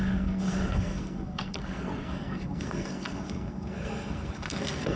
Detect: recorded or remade remade